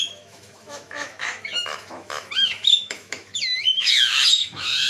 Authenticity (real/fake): fake